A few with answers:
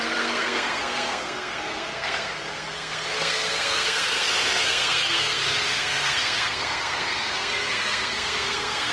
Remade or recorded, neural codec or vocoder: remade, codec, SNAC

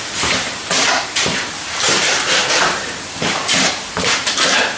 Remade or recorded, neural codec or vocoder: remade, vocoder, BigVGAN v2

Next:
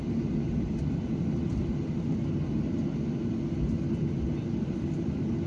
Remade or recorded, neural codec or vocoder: recorded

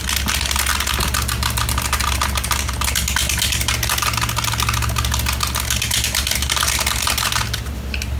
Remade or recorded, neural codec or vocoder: recorded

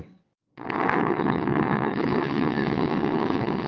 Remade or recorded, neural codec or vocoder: remade, vocoder, WaveNeXt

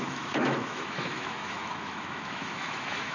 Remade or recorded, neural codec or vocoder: remade, autoencoder, DAC-VAE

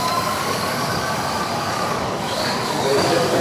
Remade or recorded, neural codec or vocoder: remade, codec, DAC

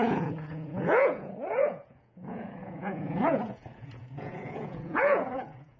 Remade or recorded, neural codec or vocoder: remade, vocoder, Vocos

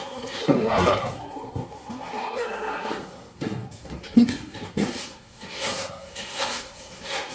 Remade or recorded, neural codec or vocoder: remade, codec, SNAC